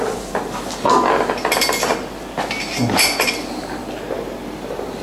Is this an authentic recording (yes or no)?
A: yes